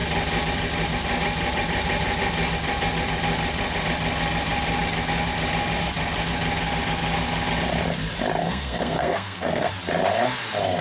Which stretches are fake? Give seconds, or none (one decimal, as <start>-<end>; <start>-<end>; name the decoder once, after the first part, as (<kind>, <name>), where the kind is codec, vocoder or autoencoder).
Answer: 8.4-9.7 (codec, SNAC)